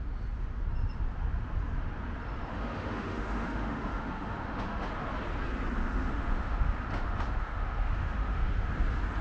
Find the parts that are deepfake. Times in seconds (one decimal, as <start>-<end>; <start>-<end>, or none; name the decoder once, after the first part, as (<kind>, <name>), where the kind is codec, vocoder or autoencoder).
2.5-4.9 (autoencoder, DAC-VAE); 5.8-8.7